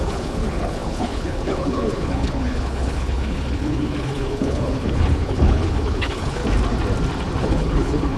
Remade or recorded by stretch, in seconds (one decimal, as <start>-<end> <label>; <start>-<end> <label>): 0.0-6.4 remade; 6.4-7.4 recorded; 7.4-8.2 remade